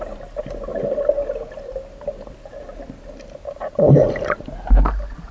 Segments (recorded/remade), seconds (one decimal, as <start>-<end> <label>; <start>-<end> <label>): 0.0-5.3 recorded